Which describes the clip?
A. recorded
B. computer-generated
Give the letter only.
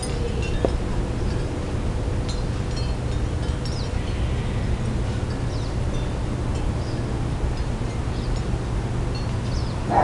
A